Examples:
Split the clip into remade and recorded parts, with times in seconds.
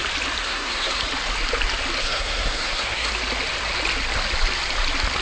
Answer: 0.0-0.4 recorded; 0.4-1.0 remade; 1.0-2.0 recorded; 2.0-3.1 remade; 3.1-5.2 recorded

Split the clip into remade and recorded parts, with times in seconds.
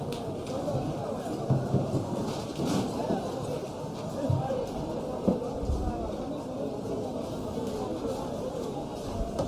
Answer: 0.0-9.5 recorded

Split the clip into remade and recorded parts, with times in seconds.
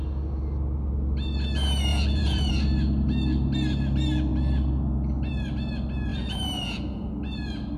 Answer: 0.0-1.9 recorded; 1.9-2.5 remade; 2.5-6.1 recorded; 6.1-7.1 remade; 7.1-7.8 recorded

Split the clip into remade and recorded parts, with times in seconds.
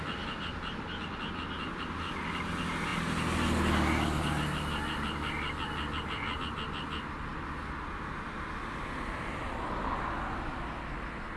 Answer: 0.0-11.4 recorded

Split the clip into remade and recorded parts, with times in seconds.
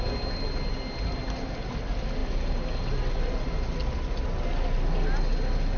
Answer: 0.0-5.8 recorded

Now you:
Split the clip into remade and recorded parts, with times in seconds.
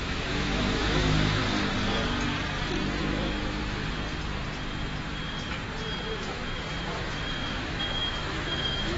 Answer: 0.0-1.4 remade; 1.4-3.0 recorded; 3.0-3.6 remade; 3.6-6.1 recorded; 6.1-9.0 remade